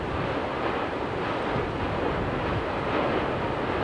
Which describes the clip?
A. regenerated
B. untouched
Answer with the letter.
B